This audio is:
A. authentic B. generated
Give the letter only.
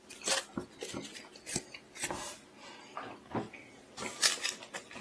A